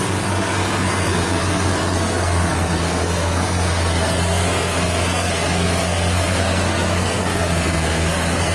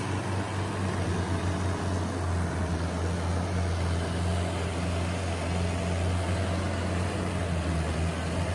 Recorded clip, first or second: second